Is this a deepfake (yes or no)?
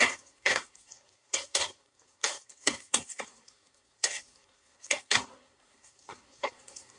yes